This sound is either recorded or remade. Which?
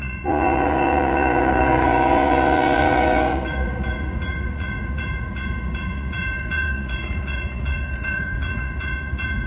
remade